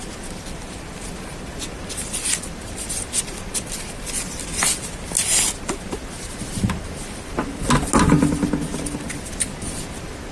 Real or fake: real